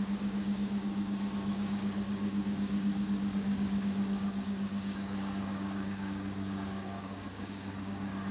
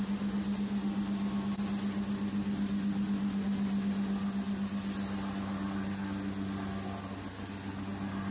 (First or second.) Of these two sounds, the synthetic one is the first